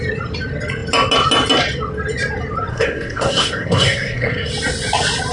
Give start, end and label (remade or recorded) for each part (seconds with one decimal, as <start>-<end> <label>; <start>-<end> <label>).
0.0-2.7 recorded; 2.7-4.5 remade; 4.5-5.3 recorded